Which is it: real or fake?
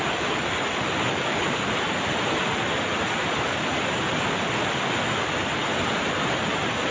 real